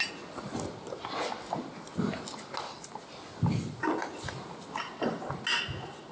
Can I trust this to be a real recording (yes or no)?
yes